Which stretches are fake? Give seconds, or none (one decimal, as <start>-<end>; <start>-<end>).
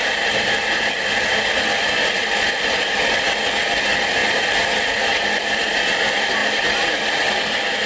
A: none